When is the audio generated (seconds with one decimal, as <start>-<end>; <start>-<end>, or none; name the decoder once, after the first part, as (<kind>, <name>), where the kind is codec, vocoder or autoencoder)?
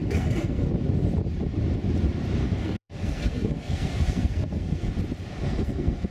0.0-0.7 (codec, SNAC); 2.4-4.9; 5.4-6.1